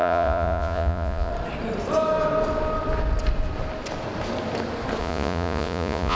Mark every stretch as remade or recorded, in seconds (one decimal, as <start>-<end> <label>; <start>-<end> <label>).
0.0-1.3 remade; 1.3-5.0 recorded; 5.0-6.2 remade